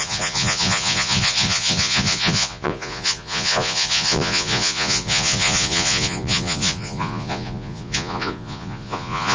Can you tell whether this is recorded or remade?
remade